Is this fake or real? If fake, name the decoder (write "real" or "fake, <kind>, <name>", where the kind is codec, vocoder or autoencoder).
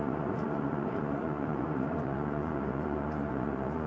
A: fake, vocoder, Vocos